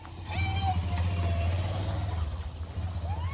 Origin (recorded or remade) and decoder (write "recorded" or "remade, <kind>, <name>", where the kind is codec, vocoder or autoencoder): recorded